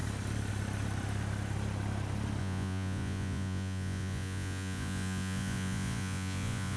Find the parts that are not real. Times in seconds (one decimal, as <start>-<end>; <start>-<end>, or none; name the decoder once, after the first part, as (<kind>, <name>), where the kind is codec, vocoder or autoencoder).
2.4-6.8 (vocoder, Vocos)